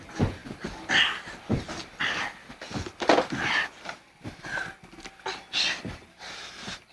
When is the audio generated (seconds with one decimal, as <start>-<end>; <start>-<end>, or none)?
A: none